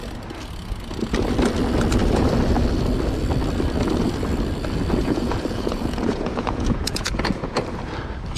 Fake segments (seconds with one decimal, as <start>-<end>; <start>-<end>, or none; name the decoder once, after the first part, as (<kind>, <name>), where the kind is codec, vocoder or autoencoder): 5.0-7.6 (vocoder, Vocos)